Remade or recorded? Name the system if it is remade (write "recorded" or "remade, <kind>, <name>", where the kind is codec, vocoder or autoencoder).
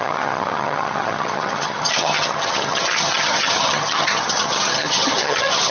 remade, vocoder, HiFi-GAN